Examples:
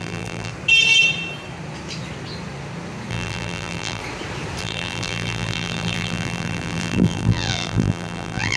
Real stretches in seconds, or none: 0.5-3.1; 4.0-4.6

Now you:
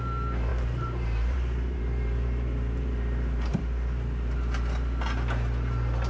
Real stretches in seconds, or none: 0.0-0.5; 3.6-6.1

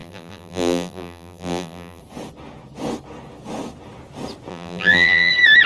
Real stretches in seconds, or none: 2.0-4.5; 5.3-5.7

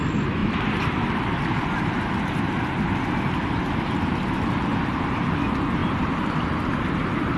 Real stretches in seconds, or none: 0.0-7.4